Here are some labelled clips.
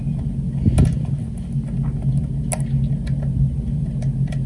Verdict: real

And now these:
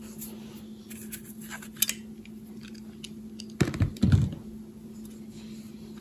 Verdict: real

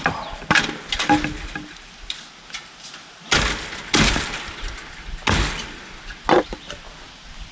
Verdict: real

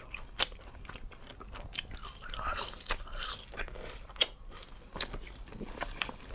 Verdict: real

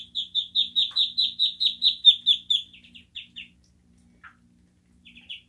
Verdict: real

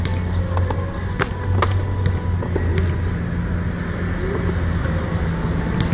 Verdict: real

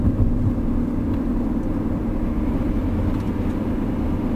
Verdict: real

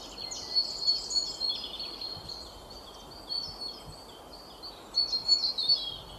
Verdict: real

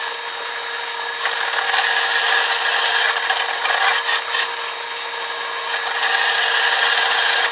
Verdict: real